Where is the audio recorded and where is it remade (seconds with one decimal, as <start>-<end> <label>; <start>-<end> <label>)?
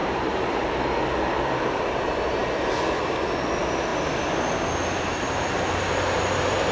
0.0-1.0 remade; 1.0-6.7 recorded